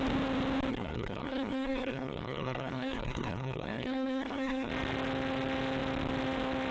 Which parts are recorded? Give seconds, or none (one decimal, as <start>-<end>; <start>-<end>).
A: 0.0-0.7; 4.7-6.7